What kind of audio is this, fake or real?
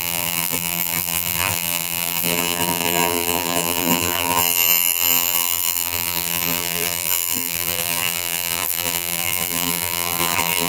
fake